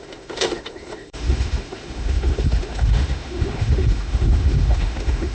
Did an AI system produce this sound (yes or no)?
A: yes